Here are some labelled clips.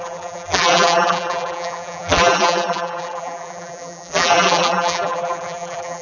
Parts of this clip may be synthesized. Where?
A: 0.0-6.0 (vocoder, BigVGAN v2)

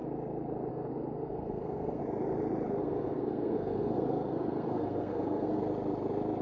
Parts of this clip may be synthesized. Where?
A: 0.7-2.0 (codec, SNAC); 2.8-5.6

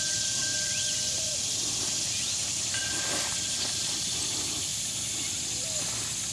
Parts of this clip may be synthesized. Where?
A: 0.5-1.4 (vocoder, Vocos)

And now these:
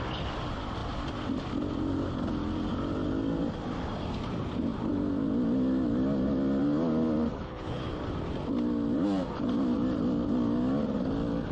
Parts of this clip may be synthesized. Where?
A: 7.3-8.0 (codec, HILCodec)

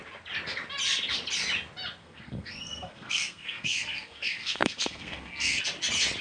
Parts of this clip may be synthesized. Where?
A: 2.0-5.6 (codec, SNAC)

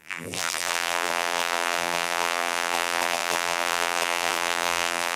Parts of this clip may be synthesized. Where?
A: 0.0-5.2 (vocoder, BigVGAN v2)

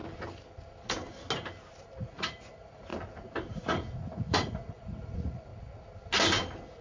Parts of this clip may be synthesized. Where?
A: 2.0-2.9 (vocoder, Vocos); 3.5-5.5

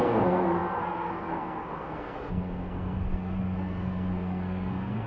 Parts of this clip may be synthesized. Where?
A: 0.0-5.1 (codec, SNAC)